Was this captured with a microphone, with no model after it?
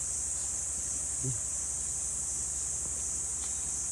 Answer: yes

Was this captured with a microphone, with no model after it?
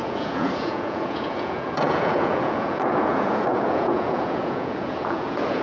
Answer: no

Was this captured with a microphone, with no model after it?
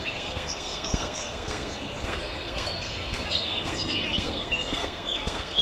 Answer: no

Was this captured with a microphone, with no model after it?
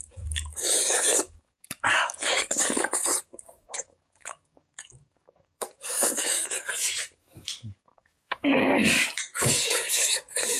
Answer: no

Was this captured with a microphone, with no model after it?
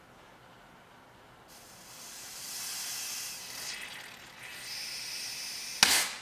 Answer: yes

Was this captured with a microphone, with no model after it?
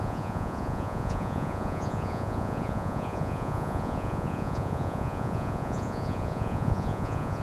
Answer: no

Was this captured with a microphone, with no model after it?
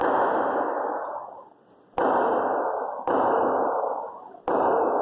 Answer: yes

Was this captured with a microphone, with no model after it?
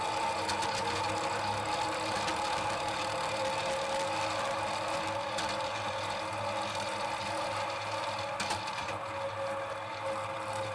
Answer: yes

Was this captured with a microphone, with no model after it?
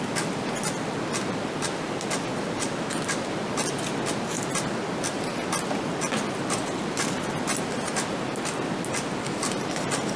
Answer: yes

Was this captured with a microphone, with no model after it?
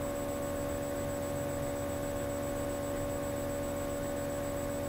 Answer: yes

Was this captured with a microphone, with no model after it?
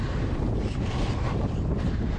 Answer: no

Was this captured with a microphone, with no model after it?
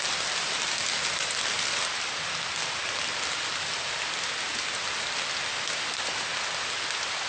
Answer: yes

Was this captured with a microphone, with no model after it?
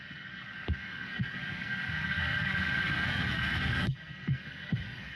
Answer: no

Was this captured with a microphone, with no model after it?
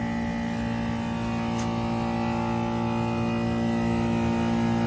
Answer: yes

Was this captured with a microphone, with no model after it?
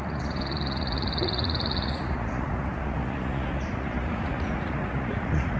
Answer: no